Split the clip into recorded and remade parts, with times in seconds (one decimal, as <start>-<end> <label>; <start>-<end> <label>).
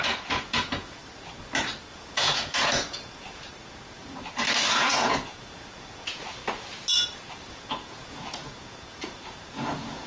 0.0-1.0 remade; 1.0-1.9 recorded; 1.9-3.5 remade; 3.5-4.7 recorded; 4.7-6.4 remade; 6.4-7.5 recorded; 7.5-10.1 remade